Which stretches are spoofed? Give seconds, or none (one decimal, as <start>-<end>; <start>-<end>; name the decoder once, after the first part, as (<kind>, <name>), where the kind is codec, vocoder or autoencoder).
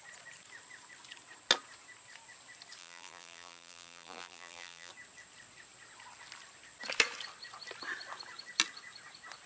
2.8-4.9 (vocoder, BigVGAN v2)